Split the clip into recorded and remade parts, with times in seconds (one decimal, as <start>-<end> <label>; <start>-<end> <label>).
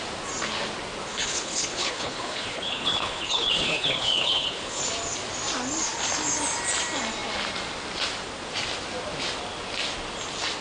0.0-1.1 recorded; 1.1-4.8 remade; 4.8-10.6 recorded